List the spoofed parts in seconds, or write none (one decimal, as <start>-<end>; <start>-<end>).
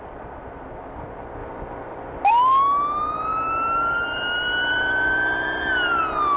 1.4-2.3